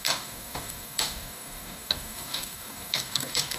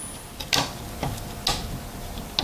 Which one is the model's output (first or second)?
first